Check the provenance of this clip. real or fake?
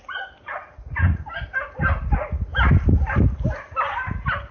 real